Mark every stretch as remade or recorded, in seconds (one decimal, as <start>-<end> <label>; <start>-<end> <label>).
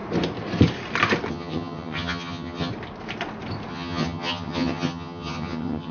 0.0-1.3 recorded; 1.3-2.7 remade; 2.7-3.7 recorded; 3.7-5.9 remade